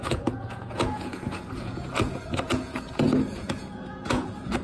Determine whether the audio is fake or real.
fake